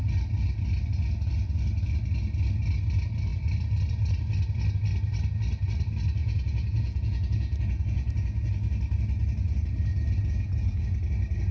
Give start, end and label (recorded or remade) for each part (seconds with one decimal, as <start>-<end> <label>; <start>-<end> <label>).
0.0-6.2 recorded; 6.2-8.5 remade; 8.5-9.9 recorded; 9.9-10.8 remade; 10.8-11.5 recorded